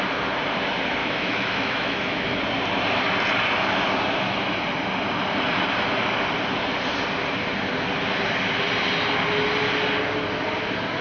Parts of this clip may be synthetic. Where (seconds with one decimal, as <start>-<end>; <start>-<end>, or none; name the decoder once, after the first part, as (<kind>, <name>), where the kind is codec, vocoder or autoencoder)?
1.0-2.4 (autoencoder, DAC-VAE)